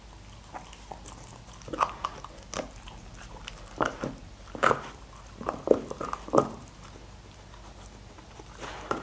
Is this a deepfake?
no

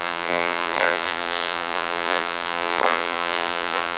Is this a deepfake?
yes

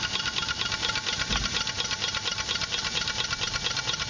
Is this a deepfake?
no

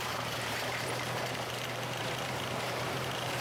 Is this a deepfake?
yes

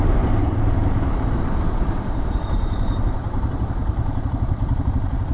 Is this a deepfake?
yes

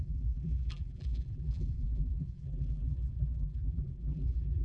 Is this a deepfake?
yes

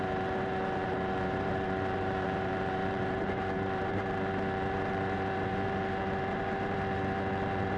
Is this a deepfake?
yes